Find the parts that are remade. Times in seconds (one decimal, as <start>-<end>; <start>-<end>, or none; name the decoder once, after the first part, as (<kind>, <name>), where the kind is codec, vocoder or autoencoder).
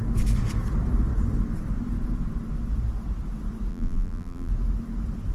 3.7-4.5 (vocoder, BigVGAN v2)